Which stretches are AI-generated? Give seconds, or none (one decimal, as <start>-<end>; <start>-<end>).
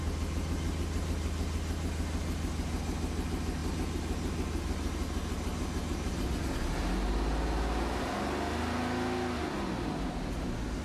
none